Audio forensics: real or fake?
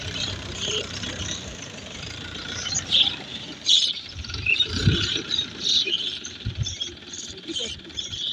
fake